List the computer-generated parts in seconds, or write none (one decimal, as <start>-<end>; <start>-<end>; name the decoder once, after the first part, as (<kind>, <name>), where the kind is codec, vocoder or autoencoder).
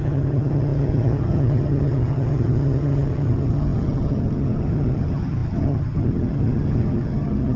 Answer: 0.0-7.6 (vocoder, HiFi-GAN)